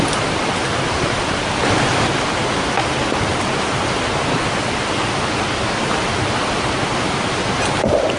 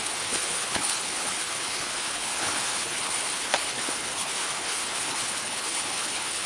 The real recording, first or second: first